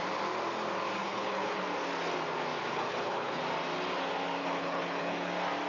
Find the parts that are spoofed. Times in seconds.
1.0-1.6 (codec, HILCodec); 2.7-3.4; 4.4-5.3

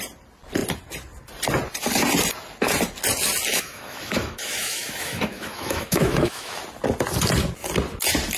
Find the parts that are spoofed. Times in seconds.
3.5-6.6 (autoencoder, DAC-VAE)

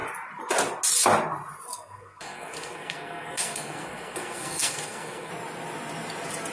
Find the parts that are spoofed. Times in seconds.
1.7-5.3 (codec, SNAC)

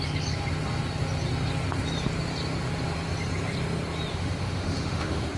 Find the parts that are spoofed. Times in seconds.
4.1-5.4 (autoencoder, DAC-VAE)

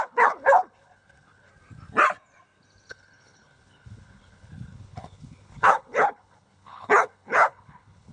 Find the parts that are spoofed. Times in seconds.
0.0-1.5 (codec, HILCodec); 2.9-8.1

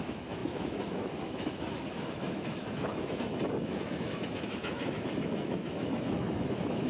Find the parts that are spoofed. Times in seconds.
0.0-6.9 (autoencoder, DAC-VAE)